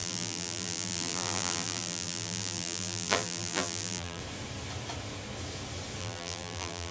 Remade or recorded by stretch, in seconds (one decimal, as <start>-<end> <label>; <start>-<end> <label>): 0.0-4.2 remade; 4.2-6.0 recorded; 6.0-6.9 remade